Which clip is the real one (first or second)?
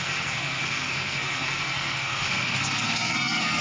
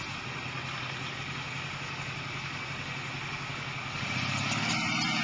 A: second